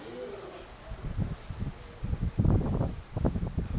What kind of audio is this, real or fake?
real